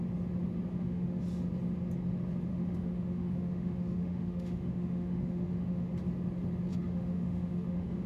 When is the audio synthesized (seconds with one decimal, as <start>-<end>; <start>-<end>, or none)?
0.7-1.2; 2.5-5.9; 6.7-8.1